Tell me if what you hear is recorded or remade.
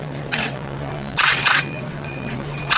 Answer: remade